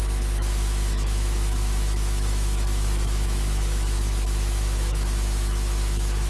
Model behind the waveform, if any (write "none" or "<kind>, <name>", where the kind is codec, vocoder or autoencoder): autoencoder, DAC-VAE